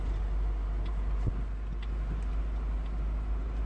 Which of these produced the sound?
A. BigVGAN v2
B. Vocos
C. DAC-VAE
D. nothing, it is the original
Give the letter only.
D